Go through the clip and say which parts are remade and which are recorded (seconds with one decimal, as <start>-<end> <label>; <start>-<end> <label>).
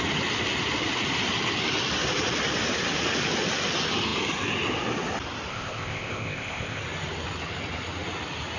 0.0-5.5 recorded; 5.5-6.8 remade; 6.8-8.6 recorded